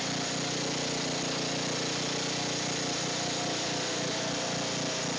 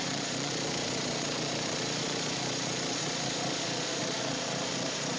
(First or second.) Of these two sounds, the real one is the first